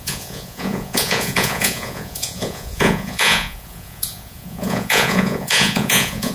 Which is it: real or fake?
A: fake